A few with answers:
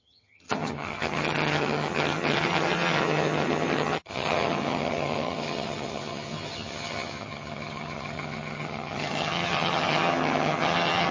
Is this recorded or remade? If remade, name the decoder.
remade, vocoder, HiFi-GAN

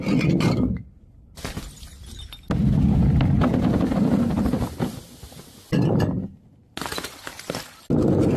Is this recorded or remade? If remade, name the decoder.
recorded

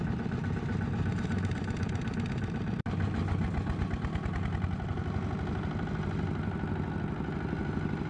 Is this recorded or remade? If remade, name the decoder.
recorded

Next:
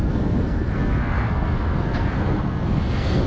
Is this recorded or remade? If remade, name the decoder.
remade, codec, SNAC